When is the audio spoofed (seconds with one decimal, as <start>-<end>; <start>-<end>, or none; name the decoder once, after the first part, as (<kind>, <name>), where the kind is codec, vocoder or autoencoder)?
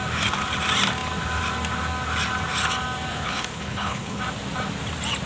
3.1-4.2 (codec, HILCodec)